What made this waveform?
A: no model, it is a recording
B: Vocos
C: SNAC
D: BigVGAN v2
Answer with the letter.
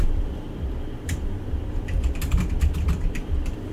D